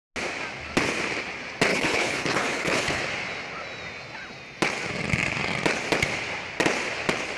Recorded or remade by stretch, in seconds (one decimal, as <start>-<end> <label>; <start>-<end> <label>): 0.0-1.7 recorded; 1.7-3.0 remade; 3.0-7.4 recorded